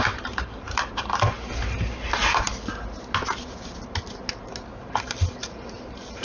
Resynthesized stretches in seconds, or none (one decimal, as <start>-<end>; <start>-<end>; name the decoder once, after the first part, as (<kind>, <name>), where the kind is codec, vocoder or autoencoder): 0.0-2.5 (vocoder, BigVGAN v2); 4.8-6.2